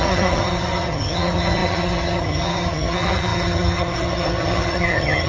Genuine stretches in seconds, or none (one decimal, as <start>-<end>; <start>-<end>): none